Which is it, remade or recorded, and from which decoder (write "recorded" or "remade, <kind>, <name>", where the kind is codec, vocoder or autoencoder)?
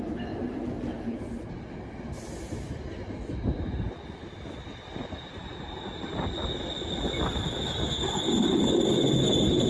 recorded